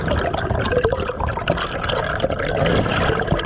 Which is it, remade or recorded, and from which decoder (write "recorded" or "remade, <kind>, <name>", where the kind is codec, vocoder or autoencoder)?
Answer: recorded